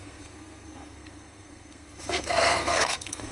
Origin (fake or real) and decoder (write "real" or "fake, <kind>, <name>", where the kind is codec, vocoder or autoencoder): fake, codec, SNAC